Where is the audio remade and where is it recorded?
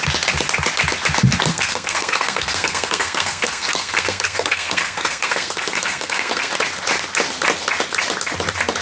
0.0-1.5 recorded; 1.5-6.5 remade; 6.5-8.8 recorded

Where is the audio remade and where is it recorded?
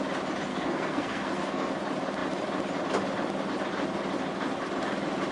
0.0-0.5 recorded; 0.5-1.7 remade; 1.7-5.3 recorded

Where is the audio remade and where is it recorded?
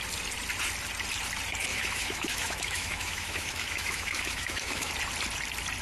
0.0-1.7 recorded; 1.7-4.9 remade; 4.9-5.8 recorded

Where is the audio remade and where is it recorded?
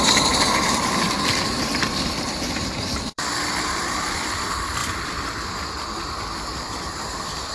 0.0-7.5 remade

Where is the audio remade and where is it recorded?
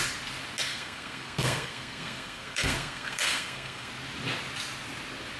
0.0-0.7 recorded; 0.7-3.9 remade; 3.9-5.4 recorded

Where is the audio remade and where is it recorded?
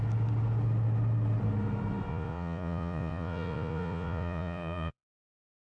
0.0-2.1 recorded; 2.1-5.7 remade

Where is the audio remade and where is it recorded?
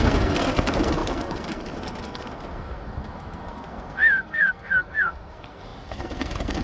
0.0-6.6 remade